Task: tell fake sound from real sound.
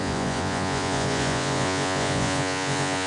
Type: fake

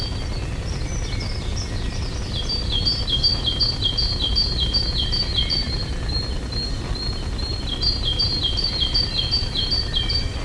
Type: real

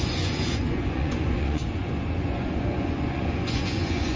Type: fake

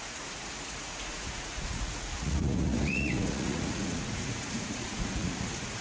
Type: fake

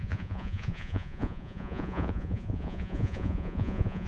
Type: fake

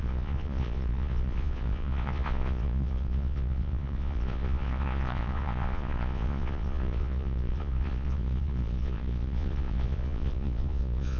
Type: fake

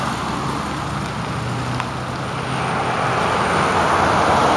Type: real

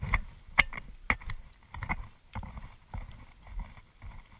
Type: real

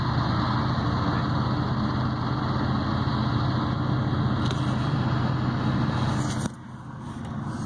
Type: real